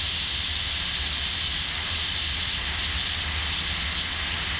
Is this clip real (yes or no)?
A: yes